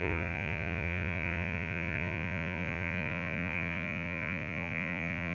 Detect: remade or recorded remade